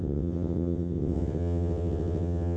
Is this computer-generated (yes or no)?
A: yes